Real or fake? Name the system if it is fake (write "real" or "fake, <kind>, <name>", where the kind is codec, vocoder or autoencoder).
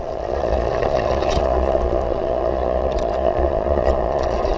fake, vocoder, Vocos